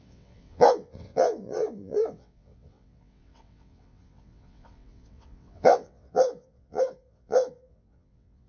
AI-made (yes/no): yes